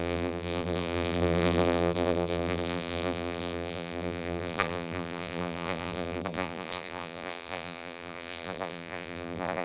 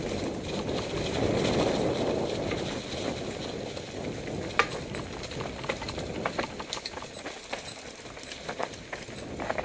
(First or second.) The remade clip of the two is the first